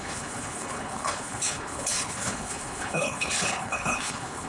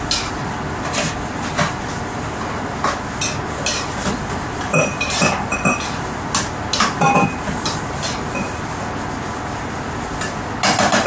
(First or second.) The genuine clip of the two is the second